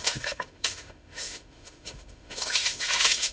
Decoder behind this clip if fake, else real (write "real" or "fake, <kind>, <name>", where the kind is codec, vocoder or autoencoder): fake, autoencoder, DAC-VAE